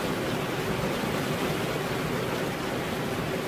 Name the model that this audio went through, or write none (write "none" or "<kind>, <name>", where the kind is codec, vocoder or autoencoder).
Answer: none